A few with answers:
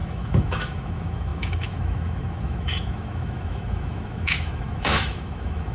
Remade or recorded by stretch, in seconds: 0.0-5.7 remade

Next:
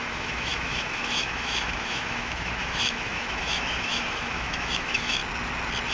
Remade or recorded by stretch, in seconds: 0.0-5.2 remade; 5.2-5.9 recorded

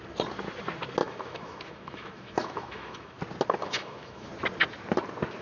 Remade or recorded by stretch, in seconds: 0.0-1.0 recorded; 1.0-3.2 remade; 3.2-3.6 recorded; 3.6-4.3 remade; 4.3-5.4 recorded

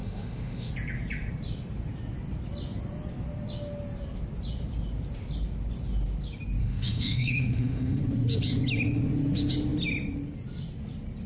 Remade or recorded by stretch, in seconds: 0.0-0.7 remade; 0.7-6.6 recorded; 6.6-8.0 remade; 8.0-11.3 recorded